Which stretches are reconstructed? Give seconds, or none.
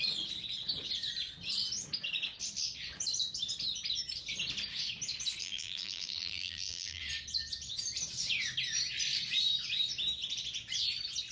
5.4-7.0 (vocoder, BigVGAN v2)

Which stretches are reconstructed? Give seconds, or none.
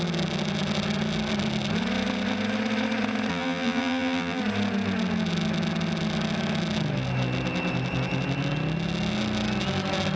3.3-4.4 (vocoder, BigVGAN v2)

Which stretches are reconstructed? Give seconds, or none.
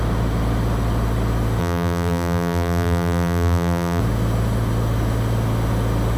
1.6-4.0 (vocoder, BigVGAN v2)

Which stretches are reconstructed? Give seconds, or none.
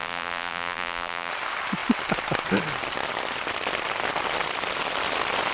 0.0-1.3 (vocoder, BigVGAN v2)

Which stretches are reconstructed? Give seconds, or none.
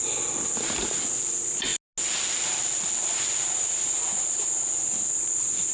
none